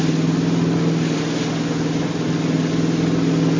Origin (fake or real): real